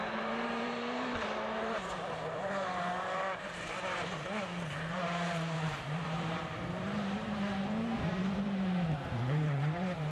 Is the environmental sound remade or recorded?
remade